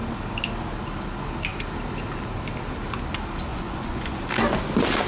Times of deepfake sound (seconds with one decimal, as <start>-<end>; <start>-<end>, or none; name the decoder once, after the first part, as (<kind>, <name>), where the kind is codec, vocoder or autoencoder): 3.5-4.2 (vocoder, Vocos)